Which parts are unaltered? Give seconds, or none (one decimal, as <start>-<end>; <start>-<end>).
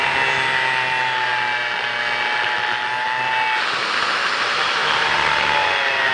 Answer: 0.0-6.1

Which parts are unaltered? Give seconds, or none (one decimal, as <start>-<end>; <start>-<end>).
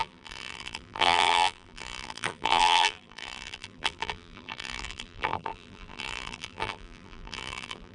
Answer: none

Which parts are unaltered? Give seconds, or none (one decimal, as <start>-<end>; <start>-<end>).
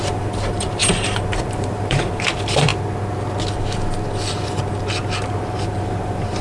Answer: 2.7-5.3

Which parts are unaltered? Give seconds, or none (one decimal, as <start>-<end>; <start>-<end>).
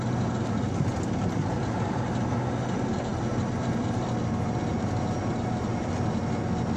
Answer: 0.0-6.8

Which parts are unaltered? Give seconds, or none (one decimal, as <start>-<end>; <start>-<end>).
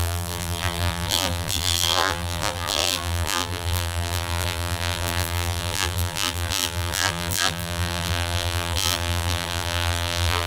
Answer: none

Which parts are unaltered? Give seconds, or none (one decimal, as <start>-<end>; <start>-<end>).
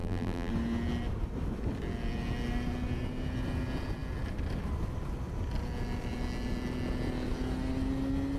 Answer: 0.5-8.4